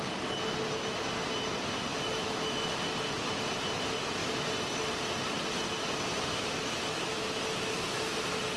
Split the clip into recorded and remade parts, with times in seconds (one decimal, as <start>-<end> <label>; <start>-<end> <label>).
0.0-1.9 recorded; 1.9-2.7 remade; 2.7-6.1 recorded; 6.1-8.1 remade; 8.1-8.6 recorded